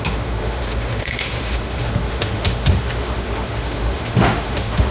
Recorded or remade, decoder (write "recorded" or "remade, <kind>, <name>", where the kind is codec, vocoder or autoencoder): remade, autoencoder, DAC-VAE